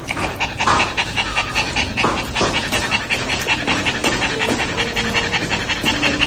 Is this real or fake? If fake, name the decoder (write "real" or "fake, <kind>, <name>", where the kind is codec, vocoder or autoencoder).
fake, vocoder, Vocos